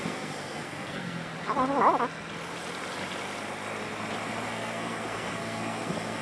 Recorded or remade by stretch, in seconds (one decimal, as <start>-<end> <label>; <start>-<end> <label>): 0.0-1.3 remade; 1.3-4.5 recorded; 4.5-6.2 remade